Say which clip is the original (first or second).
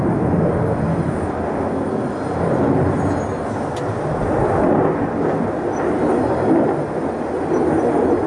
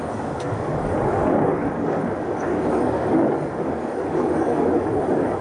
first